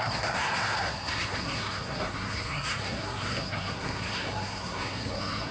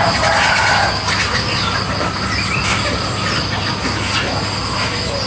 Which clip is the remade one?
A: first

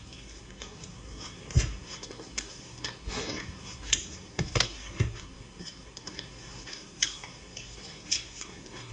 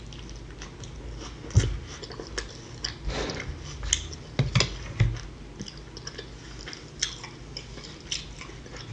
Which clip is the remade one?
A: first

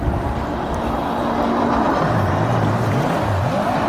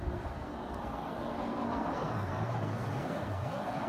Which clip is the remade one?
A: second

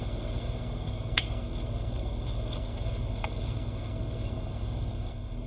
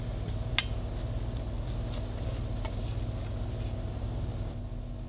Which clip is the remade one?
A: first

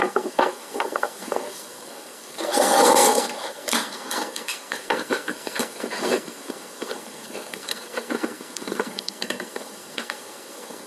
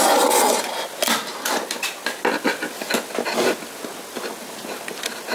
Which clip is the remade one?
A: first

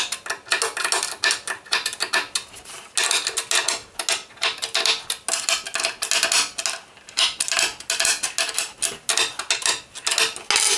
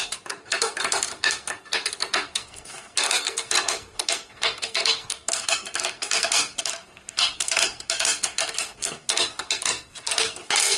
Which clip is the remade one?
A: second